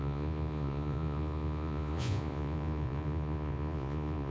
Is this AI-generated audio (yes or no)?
yes